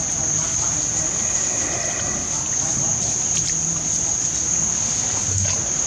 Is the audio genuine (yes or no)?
yes